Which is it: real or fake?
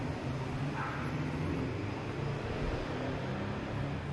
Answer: real